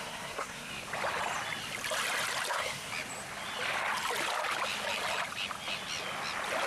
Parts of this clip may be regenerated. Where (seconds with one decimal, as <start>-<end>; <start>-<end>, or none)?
0.0-0.7; 2.5-2.9